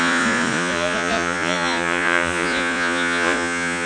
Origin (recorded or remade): remade